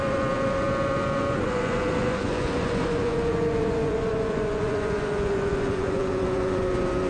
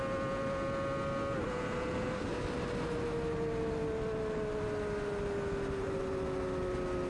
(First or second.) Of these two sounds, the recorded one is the second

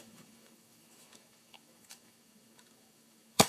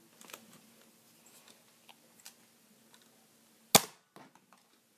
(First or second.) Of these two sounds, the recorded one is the second